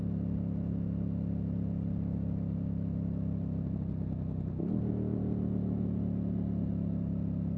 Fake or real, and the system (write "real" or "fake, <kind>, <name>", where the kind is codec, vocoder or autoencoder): real